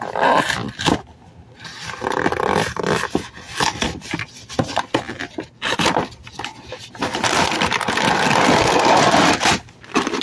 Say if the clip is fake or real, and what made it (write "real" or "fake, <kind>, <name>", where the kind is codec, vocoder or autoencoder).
real